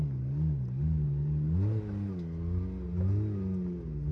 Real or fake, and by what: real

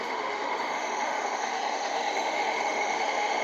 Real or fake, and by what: fake, autoencoder, DAC-VAE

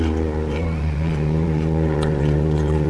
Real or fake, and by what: fake, vocoder, Vocos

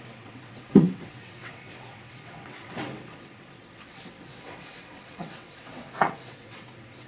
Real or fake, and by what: fake, vocoder, WaveNeXt